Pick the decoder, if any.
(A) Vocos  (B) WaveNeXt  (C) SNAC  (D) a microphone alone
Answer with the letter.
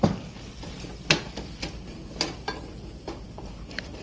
D